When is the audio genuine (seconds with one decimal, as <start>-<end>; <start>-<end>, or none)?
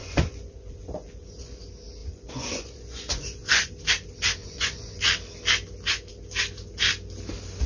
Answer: 1.6-2.0; 3.7-4.4; 5.0-7.7